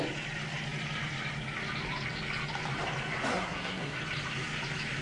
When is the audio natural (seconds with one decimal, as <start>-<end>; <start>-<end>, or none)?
0.0-3.3; 4.0-5.0